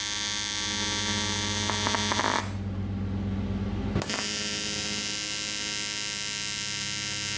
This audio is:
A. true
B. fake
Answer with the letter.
A